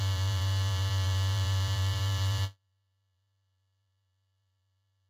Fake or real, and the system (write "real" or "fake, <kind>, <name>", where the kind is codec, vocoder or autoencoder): fake, vocoder, BigVGAN v2